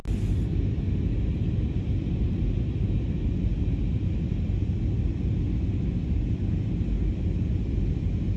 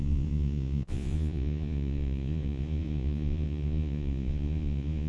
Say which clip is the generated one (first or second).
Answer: second